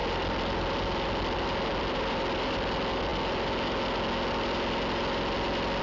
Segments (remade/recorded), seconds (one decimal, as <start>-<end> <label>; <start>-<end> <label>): 0.0-5.8 recorded